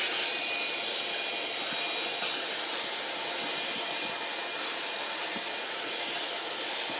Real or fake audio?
real